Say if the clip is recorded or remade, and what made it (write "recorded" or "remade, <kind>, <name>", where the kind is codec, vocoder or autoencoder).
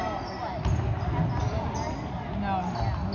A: recorded